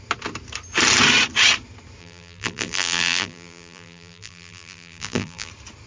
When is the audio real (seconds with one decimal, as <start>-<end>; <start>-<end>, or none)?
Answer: 0.0-2.0; 5.5-5.9